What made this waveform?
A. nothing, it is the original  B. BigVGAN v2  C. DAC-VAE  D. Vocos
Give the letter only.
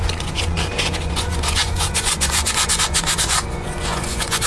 D